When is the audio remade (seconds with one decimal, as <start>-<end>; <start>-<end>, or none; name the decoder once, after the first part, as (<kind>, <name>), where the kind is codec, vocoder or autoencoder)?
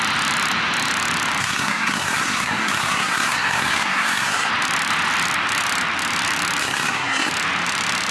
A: 1.4-4.5 (codec, SNAC); 6.6-7.3